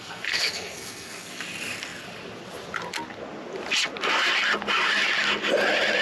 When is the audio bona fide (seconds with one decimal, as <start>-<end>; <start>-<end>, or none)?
1.4-6.0